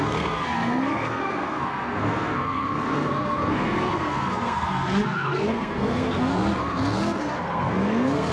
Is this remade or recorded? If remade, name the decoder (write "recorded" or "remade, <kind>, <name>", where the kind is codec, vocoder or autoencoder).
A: remade, codec, SNAC